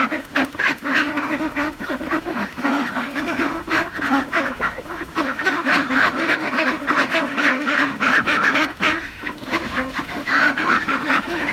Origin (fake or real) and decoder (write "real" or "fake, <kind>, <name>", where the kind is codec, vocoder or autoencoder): fake, autoencoder, DAC-VAE